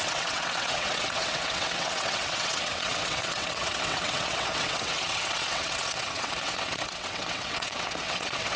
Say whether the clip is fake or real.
fake